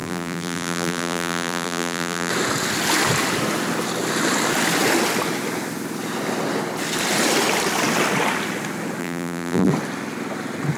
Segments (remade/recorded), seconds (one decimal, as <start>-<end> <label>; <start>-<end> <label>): 0.0-2.3 remade; 2.3-9.0 recorded; 9.0-9.7 remade; 9.7-10.8 recorded